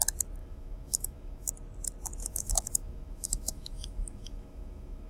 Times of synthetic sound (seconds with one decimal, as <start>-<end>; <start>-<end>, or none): 0.4-1.5; 2.2-5.1